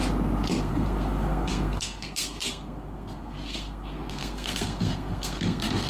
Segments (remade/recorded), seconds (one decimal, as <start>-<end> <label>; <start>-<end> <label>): 0.0-0.6 recorded; 0.6-5.9 remade